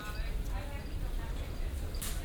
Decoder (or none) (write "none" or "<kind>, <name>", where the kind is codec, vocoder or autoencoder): none